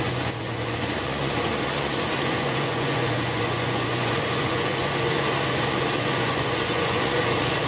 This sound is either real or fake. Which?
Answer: fake